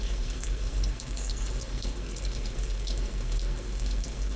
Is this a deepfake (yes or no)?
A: yes